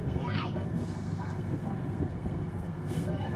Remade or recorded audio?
remade